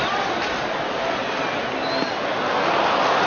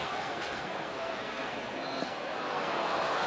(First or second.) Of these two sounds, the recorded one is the first